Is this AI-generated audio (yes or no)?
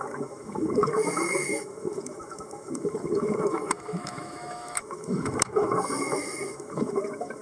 yes